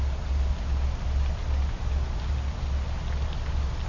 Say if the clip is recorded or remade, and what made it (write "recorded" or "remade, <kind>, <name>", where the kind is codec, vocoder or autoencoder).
recorded